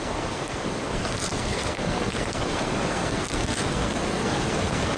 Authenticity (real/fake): fake